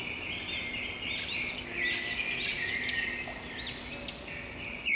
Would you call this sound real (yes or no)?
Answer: yes